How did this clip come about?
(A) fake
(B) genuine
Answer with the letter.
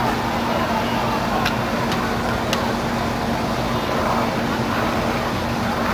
B